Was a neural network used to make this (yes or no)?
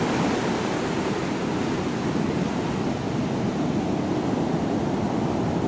no